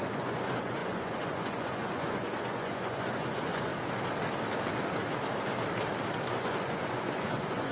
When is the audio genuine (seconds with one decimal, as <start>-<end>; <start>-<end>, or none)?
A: 3.7-6.3